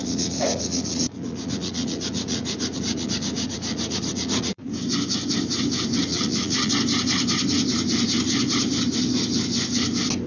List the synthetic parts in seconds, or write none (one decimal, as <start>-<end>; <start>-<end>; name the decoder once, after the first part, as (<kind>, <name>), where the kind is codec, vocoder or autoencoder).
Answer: 0.0-4.7 (vocoder, Vocos); 6.1-6.7